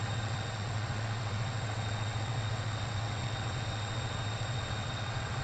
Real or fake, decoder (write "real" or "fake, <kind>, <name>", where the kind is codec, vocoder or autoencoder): fake, vocoder, WaveNeXt